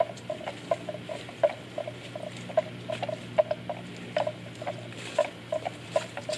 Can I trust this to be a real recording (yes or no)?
yes